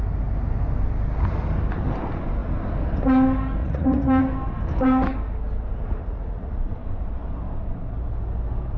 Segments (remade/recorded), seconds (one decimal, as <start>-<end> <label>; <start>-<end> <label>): 0.0-3.6 recorded; 3.6-4.2 remade; 4.2-6.0 recorded; 6.0-6.7 remade; 6.7-8.8 recorded